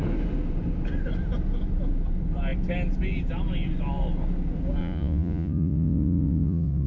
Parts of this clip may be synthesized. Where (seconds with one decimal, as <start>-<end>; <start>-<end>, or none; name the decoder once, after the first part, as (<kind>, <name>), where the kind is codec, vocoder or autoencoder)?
4.8-6.9 (vocoder, Vocos)